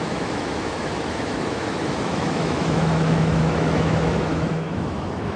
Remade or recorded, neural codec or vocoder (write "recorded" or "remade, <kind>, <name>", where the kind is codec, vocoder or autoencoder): remade, autoencoder, DAC-VAE